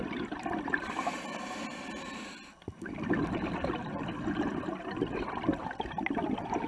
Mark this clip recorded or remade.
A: recorded